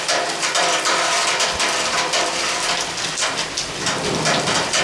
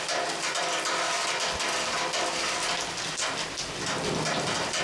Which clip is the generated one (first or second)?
first